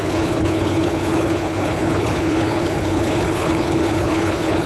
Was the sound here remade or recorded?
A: remade